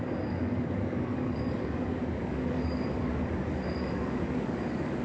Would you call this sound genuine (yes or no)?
no